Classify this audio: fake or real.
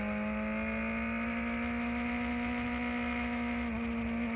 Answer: real